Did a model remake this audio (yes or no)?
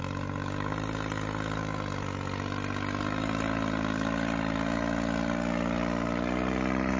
no